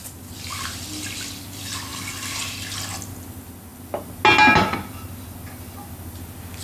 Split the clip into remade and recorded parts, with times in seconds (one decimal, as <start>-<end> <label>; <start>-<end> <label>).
0.0-6.6 recorded